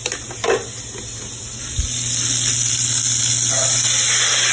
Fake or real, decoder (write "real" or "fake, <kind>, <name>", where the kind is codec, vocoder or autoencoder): real